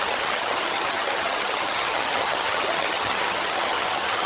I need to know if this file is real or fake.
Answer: fake